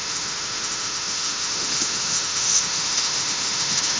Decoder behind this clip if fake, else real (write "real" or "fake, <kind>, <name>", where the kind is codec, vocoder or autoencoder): fake, autoencoder, DAC-VAE